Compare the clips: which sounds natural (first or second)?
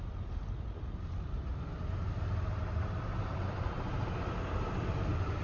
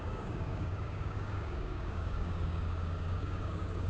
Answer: first